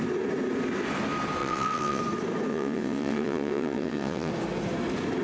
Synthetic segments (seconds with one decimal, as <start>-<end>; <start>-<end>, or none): 1.4-2.0; 2.5-4.3